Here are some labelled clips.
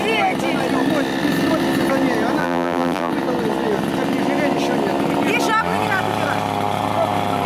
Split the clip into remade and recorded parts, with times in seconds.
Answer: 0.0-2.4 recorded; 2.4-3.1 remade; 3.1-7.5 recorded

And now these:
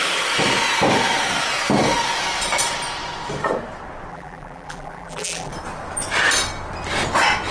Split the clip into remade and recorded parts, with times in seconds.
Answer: 0.0-4.1 recorded; 4.1-5.5 remade; 5.5-7.5 recorded

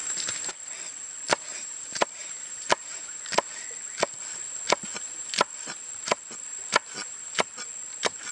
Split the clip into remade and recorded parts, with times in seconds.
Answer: 0.0-0.5 remade; 0.5-1.5 recorded; 1.5-3.2 remade; 3.2-7.0 recorded; 7.0-7.5 remade; 7.5-8.3 recorded

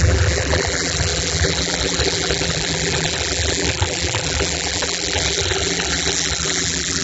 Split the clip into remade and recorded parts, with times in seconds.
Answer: 0.0-7.0 remade